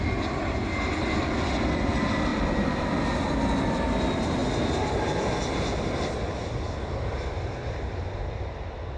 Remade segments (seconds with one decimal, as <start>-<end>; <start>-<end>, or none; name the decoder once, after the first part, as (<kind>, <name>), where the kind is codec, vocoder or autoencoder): none